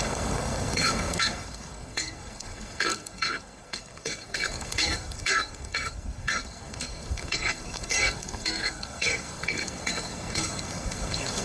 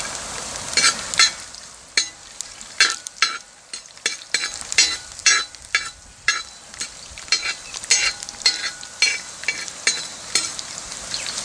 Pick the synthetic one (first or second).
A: first